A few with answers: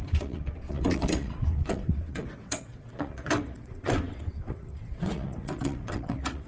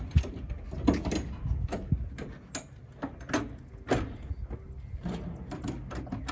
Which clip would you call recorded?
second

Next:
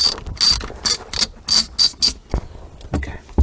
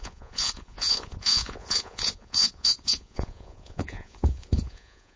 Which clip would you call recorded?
first